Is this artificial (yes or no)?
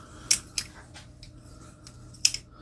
no